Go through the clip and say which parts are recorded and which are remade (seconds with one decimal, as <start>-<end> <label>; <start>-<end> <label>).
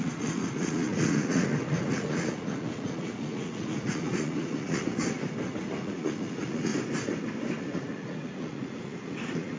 0.0-5.0 remade; 5.0-5.6 recorded; 5.6-6.7 remade; 6.7-7.6 recorded; 7.6-9.6 remade